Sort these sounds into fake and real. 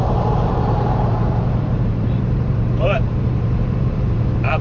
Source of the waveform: fake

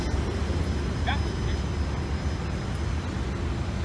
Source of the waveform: real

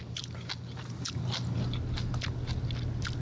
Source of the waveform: real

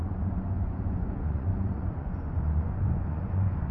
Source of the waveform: fake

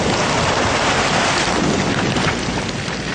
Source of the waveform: real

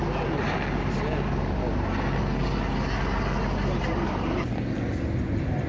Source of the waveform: real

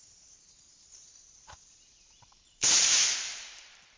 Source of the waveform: fake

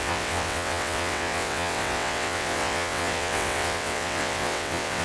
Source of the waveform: fake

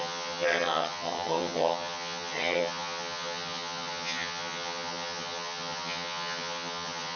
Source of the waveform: fake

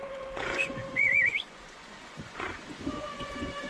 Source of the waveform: fake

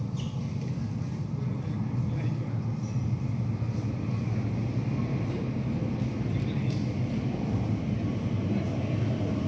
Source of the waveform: real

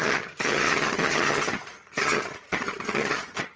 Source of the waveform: fake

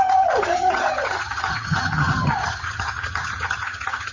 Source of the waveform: fake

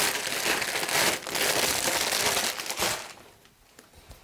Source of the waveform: real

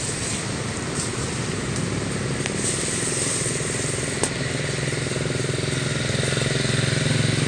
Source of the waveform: real